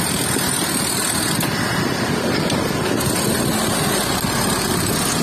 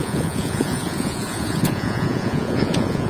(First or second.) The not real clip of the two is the second